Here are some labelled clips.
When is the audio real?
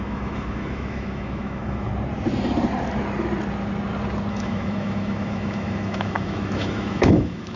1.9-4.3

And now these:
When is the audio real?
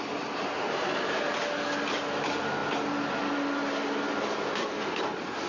0.0-5.5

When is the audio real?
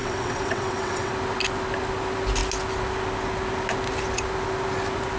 1.1-5.2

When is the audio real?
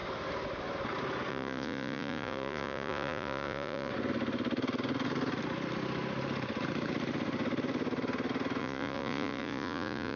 0.0-1.3; 3.9-8.6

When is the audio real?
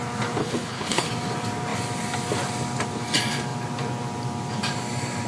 0.0-0.4; 1.1-5.3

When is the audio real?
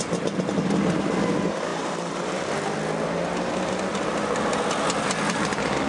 0.0-1.7; 2.5-3.9; 4.5-5.9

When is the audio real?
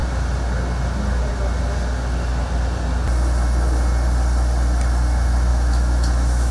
0.0-5.5